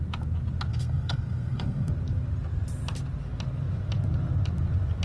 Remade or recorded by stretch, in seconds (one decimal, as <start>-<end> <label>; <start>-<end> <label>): 0.0-0.7 recorded; 0.7-1.9 remade; 1.9-5.0 recorded